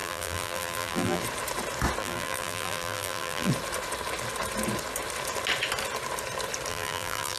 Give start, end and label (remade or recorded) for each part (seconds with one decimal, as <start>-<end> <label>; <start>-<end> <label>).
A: 0.0-1.2 remade; 1.2-2.0 recorded; 2.0-3.5 remade; 3.5-6.7 recorded; 6.7-7.4 remade